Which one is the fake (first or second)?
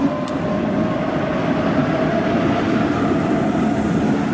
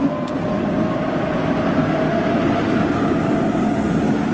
first